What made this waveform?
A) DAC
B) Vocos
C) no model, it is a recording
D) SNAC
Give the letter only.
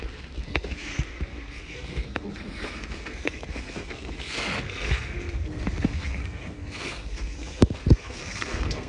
D